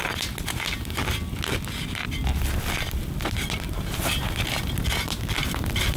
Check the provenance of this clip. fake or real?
real